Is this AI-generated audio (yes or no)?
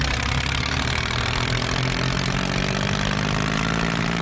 no